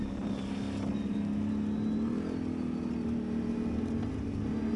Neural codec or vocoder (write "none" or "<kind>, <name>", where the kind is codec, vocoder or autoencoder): none